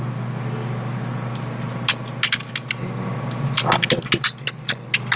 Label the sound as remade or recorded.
recorded